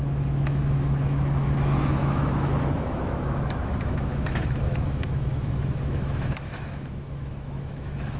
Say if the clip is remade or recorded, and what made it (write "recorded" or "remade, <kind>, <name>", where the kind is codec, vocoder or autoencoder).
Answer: remade, autoencoder, DAC-VAE